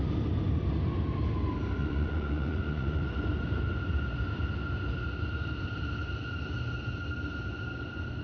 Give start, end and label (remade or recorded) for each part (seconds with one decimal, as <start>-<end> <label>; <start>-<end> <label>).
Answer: 0.0-1.8 recorded; 1.8-3.0 remade; 3.0-8.2 recorded